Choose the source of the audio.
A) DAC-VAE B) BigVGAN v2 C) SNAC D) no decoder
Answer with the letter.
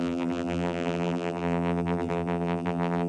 B